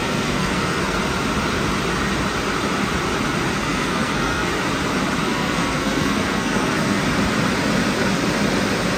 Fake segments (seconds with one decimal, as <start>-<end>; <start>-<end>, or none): 0.0-1.0; 3.6-4.5; 5.2-7.0